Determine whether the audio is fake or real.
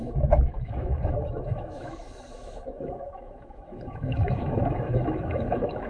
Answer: fake